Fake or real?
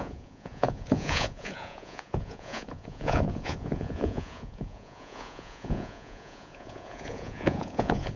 fake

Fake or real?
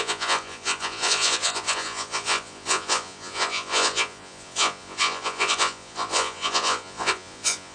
fake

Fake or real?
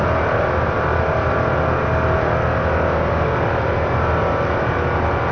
real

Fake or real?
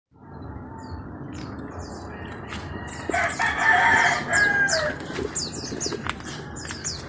real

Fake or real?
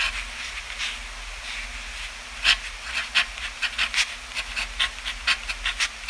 real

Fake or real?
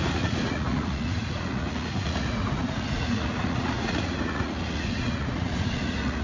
fake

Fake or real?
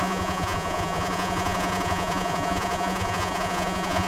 fake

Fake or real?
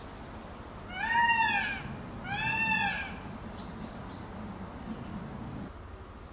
real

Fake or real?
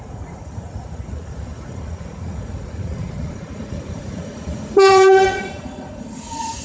fake